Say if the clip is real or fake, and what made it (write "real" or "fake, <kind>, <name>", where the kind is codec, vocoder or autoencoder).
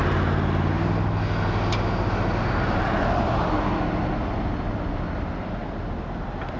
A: real